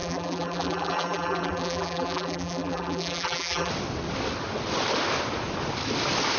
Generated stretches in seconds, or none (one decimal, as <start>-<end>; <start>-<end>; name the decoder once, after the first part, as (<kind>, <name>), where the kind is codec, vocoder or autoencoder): 0.0-3.7 (vocoder, BigVGAN v2)